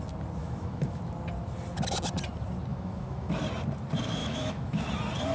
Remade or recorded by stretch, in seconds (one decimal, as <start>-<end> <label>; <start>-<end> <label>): 0.0-0.4 recorded; 0.4-1.0 remade; 1.0-2.7 recorded; 2.7-3.4 remade; 3.4-4.2 recorded; 4.2-4.8 remade; 4.8-5.3 recorded